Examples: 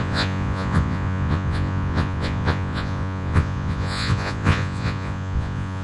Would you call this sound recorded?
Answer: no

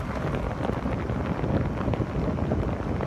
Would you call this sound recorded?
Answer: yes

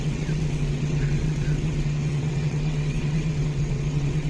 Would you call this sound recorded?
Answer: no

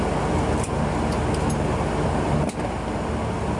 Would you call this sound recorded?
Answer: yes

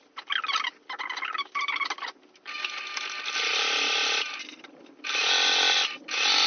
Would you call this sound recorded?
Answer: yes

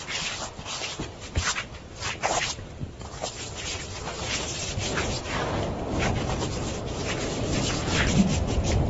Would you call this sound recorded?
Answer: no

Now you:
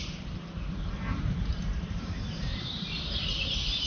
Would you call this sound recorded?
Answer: no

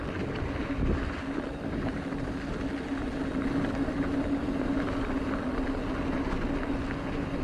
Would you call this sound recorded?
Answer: yes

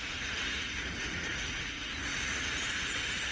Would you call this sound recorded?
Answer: no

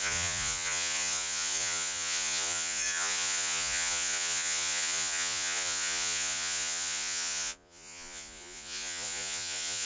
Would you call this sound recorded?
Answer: no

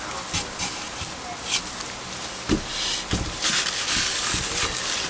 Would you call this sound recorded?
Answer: yes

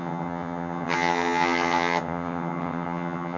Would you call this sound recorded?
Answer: no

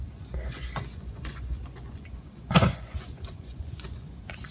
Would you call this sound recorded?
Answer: no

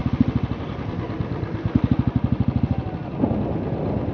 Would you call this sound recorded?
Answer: yes